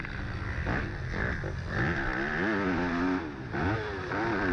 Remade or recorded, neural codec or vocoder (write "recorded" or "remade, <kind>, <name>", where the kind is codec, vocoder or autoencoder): recorded